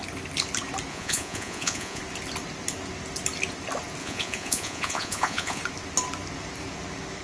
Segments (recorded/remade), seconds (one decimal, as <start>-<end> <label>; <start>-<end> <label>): 0.0-0.9 recorded; 0.9-2.0 remade; 2.0-4.0 recorded; 4.0-5.6 remade; 5.6-7.2 recorded